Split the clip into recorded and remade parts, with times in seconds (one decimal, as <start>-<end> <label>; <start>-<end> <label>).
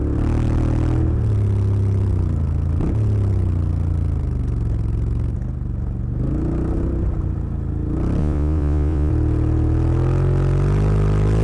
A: 0.0-8.2 recorded; 8.2-9.1 remade; 9.1-11.4 recorded